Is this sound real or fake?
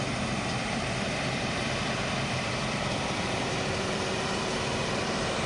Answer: fake